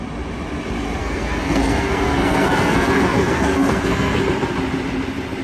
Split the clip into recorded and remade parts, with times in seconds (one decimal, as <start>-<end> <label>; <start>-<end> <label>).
0.0-1.0 recorded; 1.0-4.2 remade; 4.2-5.4 recorded